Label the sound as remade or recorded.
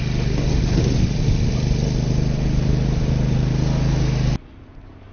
recorded